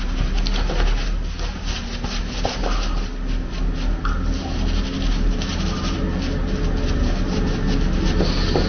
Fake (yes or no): no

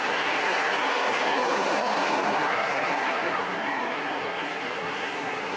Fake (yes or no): yes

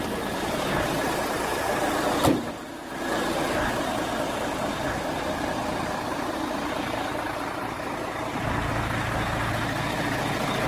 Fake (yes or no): no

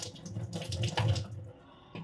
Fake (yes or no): no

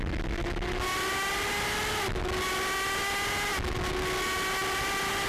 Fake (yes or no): no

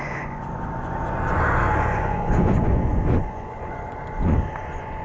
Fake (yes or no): yes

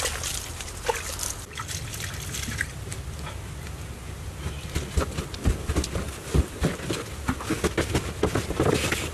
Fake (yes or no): no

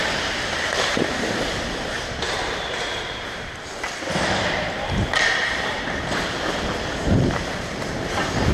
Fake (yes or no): yes